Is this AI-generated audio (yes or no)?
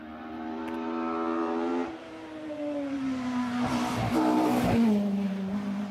yes